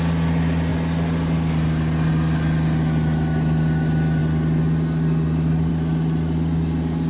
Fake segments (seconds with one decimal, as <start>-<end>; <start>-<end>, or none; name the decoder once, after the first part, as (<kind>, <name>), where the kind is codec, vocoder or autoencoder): none